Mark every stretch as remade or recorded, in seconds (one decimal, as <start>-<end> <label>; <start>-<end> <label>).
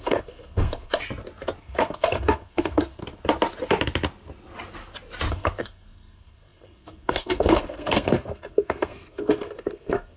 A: 0.0-1.0 remade; 1.0-1.6 recorded; 1.6-3.0 remade; 3.0-5.3 recorded; 5.3-10.2 remade